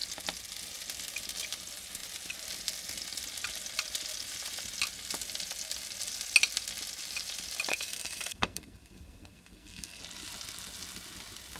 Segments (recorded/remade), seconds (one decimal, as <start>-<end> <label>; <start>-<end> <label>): 0.0-7.7 recorded; 7.7-10.0 remade; 10.0-11.6 recorded